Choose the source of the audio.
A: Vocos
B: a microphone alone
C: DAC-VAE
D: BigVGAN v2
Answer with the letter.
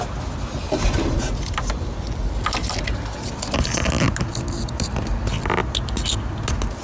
B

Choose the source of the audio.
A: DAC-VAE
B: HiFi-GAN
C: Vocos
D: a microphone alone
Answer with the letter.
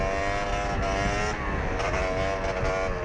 D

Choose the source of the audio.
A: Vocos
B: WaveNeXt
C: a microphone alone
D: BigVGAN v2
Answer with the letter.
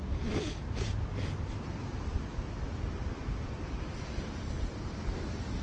C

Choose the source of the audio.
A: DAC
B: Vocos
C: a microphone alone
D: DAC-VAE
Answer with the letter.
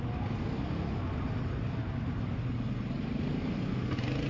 C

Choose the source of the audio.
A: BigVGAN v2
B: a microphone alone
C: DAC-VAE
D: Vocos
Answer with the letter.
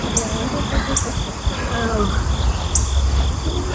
B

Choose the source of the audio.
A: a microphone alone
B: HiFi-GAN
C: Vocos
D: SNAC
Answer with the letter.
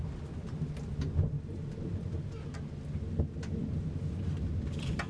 A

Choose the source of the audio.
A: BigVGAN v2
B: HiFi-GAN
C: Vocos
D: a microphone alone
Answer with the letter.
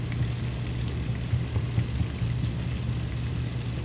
D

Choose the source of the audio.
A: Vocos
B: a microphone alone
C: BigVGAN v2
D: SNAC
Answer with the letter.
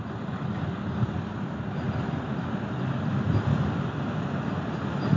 B